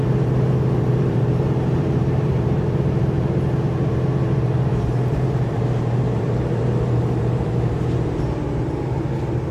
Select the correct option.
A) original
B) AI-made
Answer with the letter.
B